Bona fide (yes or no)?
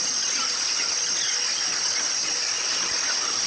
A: yes